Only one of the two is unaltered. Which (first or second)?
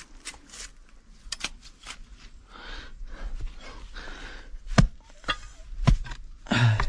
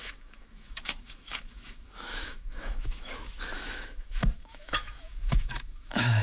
first